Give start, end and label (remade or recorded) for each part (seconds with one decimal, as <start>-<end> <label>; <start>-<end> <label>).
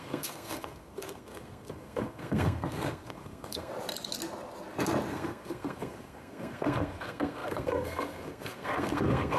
0.0-3.7 remade; 3.7-5.1 recorded; 5.1-9.4 remade